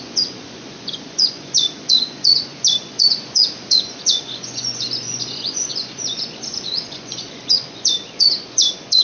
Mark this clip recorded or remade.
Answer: remade